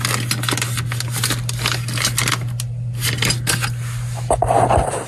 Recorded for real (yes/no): yes